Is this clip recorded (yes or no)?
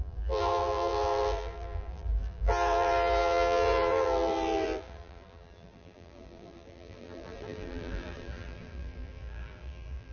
no